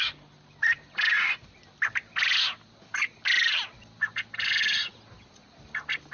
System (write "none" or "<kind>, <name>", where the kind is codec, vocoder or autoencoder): none